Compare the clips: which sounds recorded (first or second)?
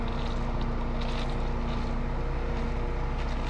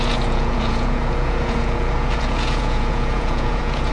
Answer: first